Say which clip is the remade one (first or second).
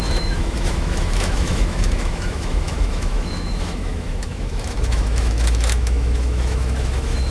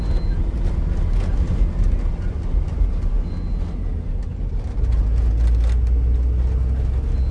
first